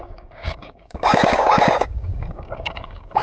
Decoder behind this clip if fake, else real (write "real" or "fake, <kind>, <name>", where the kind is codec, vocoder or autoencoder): fake, codec, DAC